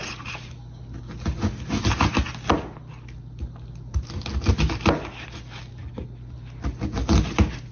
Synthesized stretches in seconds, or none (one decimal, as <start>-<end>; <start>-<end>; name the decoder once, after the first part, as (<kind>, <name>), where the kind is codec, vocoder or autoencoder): none